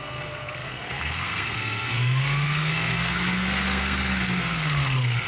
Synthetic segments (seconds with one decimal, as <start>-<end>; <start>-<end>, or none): 0.0-5.3